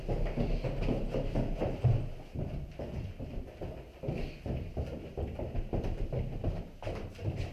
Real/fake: real